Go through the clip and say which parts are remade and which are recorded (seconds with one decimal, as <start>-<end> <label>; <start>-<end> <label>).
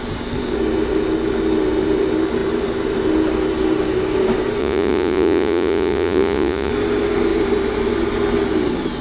0.0-4.6 recorded; 4.6-6.7 remade; 6.7-9.0 recorded